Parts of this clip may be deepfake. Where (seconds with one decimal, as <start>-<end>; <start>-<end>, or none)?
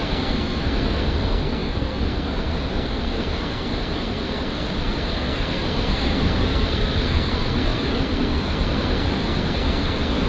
0.0-10.3